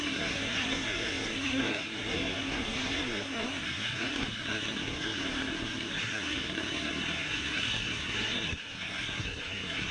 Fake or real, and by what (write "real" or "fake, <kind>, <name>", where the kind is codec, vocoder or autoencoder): fake, codec, SNAC